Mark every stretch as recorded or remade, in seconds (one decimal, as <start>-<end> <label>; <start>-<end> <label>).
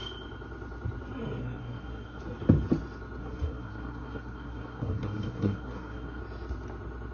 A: 0.0-1.4 recorded; 1.4-2.2 remade; 2.2-3.2 recorded; 3.2-6.2 remade; 6.2-7.1 recorded